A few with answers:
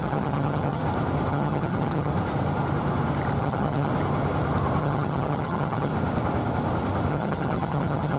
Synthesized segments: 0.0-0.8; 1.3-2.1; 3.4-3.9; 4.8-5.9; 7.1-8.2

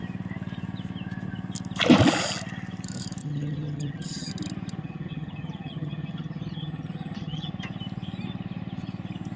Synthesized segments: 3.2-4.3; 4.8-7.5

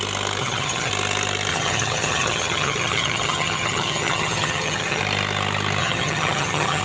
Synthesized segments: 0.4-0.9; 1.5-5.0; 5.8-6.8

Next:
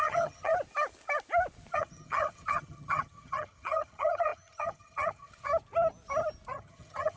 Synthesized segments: 0.0-0.5; 1.7-5.5; 6.5-7.2